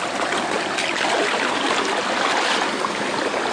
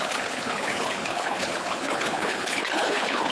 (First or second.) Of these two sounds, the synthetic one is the second